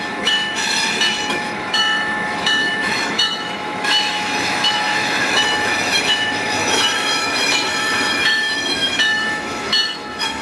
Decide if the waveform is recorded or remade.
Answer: remade